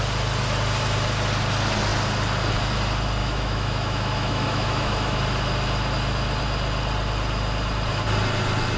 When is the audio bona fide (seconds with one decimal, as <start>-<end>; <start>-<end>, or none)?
0.0-3.2; 5.2-8.8